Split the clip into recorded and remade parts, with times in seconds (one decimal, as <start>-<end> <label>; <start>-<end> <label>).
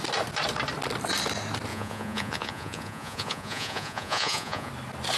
0.0-1.7 recorded; 1.7-4.7 remade; 4.7-5.2 recorded